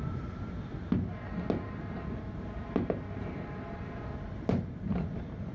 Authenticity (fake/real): real